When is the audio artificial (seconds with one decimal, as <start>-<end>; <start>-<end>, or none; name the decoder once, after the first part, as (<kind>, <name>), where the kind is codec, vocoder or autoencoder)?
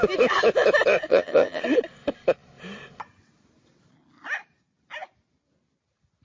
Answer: 1.1-1.6 (vocoder, HiFi-GAN)